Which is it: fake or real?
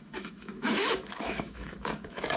fake